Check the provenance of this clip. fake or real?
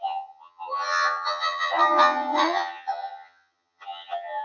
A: fake